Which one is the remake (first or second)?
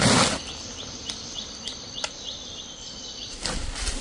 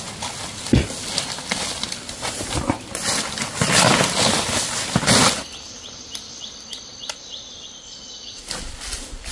first